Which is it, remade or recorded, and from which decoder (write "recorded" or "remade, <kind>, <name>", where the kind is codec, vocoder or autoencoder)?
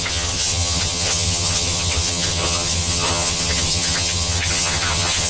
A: remade, vocoder, HiFi-GAN